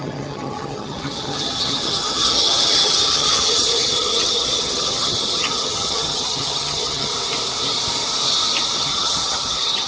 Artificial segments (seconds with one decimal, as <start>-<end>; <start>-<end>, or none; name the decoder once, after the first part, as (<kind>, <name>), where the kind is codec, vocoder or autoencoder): 0.0-7.1 (vocoder, HiFi-GAN); 8.8-9.9